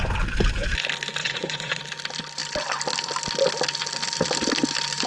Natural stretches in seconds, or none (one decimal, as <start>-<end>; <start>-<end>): 0.0-1.2; 1.8-5.1